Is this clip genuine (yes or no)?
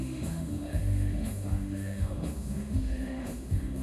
no